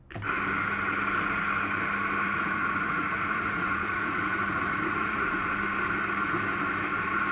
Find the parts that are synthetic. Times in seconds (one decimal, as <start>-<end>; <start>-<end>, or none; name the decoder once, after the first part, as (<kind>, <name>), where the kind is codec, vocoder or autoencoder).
2.2-5.5 (vocoder, Vocos)